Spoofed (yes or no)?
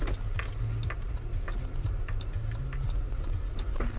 no